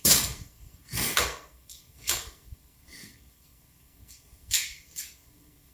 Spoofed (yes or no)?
yes